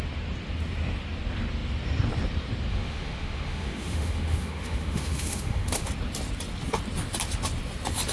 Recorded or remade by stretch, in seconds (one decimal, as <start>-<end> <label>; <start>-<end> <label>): 0.0-2.7 recorded; 2.7-5.9 remade; 5.9-8.1 recorded